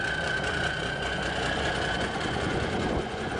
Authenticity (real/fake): fake